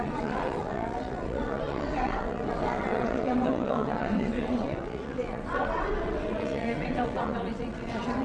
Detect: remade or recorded remade